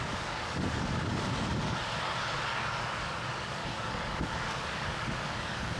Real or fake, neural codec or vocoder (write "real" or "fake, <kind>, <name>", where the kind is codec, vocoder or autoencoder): fake, codec, DAC